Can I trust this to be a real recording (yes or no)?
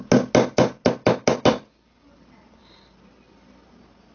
yes